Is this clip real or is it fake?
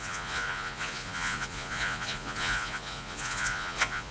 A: fake